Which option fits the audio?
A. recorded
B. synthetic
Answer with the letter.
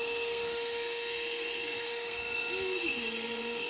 B